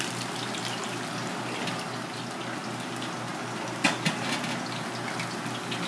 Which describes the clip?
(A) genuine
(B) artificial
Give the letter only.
A